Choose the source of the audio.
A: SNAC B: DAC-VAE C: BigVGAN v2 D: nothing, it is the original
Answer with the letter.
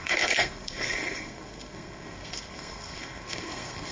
A